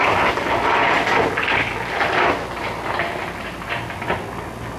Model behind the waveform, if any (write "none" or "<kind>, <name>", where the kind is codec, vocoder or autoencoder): none